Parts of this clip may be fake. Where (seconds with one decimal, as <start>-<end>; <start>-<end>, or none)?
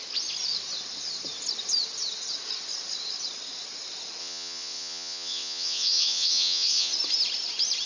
4.2-6.9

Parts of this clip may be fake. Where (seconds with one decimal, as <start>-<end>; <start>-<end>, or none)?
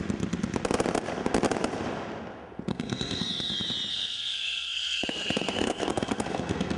2.7-3.5; 3.9-6.8